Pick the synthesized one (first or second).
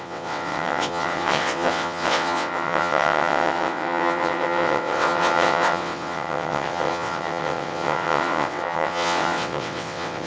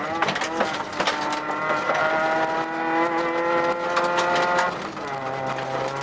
first